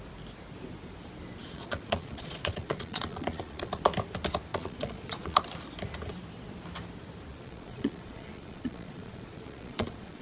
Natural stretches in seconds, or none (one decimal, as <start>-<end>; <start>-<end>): 0.0-1.4; 3.8-4.5; 5.4-7.3